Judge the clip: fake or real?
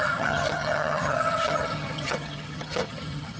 fake